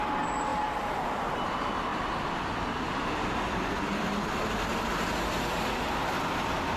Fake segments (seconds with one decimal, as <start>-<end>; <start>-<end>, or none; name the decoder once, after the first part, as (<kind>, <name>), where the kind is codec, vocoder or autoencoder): 0.5-1.0 (vocoder, BigVGAN v2); 3.9-4.9